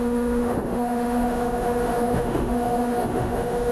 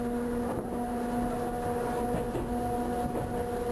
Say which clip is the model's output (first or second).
first